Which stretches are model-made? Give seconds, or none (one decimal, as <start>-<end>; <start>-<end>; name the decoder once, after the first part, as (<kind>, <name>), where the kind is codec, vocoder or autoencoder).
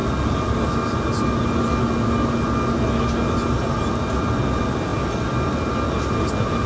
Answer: none